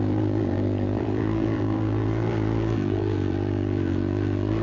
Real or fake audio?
fake